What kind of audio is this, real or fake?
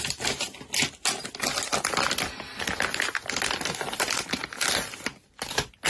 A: real